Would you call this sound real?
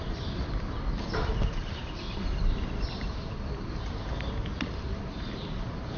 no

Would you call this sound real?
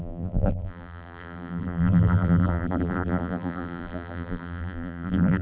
no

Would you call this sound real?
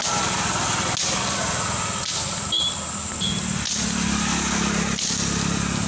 yes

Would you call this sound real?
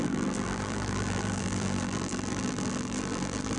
no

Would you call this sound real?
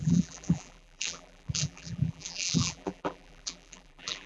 no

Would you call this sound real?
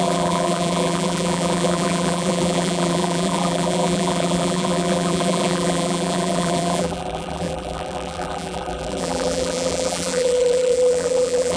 no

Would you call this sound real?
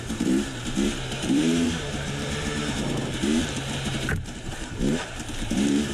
no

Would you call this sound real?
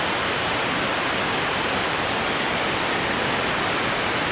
yes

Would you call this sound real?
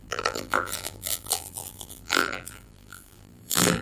no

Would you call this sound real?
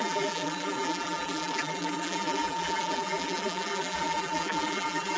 no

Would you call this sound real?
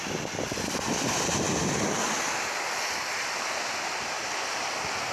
yes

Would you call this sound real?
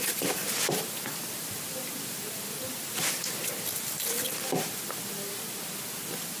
no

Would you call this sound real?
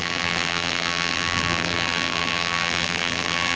no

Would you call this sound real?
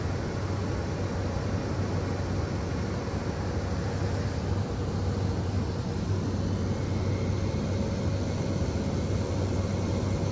yes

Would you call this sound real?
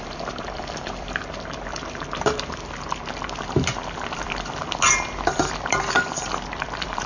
no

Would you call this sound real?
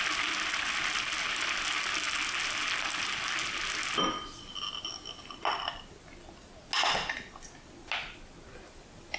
yes